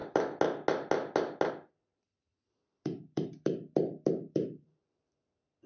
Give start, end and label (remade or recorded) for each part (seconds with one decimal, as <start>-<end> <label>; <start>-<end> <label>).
0.0-1.9 recorded; 1.9-5.3 remade; 5.3-5.7 recorded